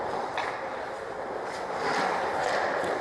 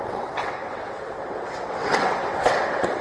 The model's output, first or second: second